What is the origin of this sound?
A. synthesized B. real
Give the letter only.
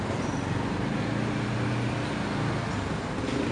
B